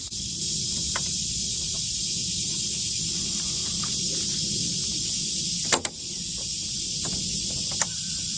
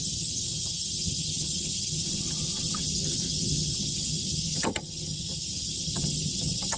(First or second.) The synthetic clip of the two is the second